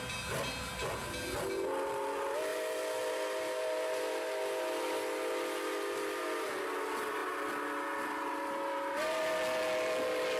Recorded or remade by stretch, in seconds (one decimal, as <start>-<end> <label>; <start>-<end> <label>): 0.0-10.4 recorded

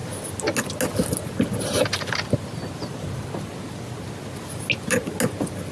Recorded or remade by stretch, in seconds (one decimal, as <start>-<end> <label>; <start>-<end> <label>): 0.0-5.7 recorded

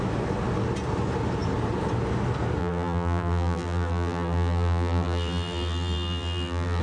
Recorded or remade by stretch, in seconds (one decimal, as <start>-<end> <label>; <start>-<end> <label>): 0.0-2.6 recorded; 2.6-6.8 remade